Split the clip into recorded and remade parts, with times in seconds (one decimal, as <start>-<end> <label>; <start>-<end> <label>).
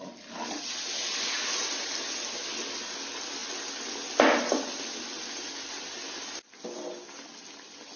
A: 0.0-8.0 recorded